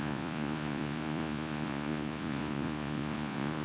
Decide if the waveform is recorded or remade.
remade